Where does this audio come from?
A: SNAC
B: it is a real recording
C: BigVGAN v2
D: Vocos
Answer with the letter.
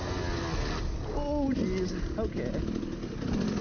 B